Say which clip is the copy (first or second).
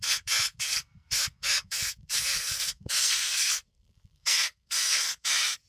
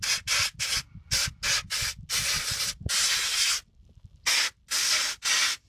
first